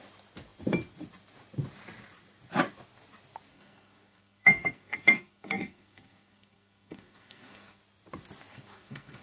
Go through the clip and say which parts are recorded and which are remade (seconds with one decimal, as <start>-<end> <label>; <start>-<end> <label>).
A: 0.0-3.5 recorded; 3.5-7.8 remade; 7.8-8.5 recorded; 8.5-9.2 remade